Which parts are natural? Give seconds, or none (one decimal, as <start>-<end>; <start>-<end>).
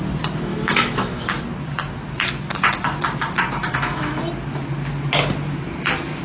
0.0-0.5; 1.2-3.6; 4.2-6.2